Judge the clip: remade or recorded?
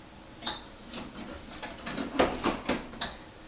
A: recorded